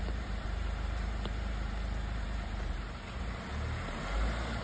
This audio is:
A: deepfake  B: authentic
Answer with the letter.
A